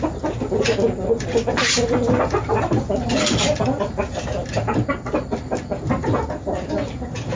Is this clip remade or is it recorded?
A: recorded